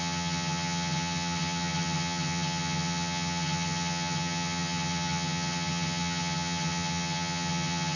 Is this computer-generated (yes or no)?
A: yes